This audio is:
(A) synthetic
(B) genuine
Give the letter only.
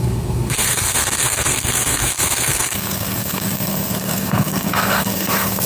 A